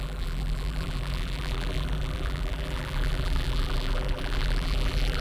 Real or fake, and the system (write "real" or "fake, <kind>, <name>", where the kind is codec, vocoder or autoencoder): fake, vocoder, BigVGAN v2